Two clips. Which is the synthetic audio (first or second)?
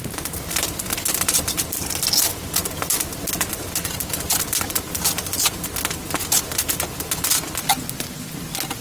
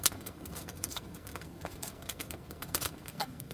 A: second